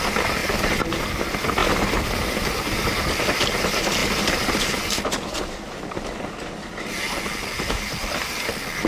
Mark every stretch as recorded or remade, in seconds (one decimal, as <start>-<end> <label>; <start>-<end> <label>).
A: 0.0-8.9 recorded